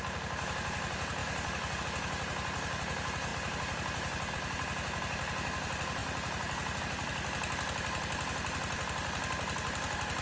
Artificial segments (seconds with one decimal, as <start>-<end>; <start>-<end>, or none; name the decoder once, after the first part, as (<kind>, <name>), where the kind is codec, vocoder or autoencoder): 1.2-1.8 (vocoder, BigVGAN v2); 3.3-4.3